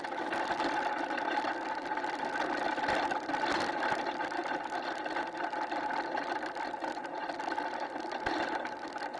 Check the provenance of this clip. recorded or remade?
recorded